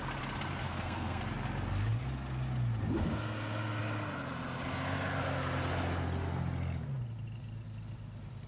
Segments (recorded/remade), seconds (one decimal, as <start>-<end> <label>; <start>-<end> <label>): 0.0-0.6 recorded; 0.6-1.2 remade; 1.2-8.5 recorded